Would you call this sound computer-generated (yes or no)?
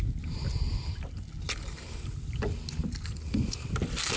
no